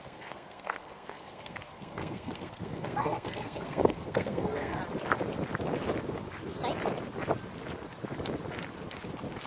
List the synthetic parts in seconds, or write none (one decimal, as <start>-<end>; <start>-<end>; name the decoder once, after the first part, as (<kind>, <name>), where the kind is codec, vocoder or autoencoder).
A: 0.0-4.8 (codec, SNAC)